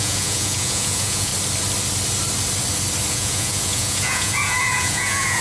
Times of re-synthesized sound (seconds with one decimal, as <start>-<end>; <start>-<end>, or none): 0.0-1.3; 3.1-5.4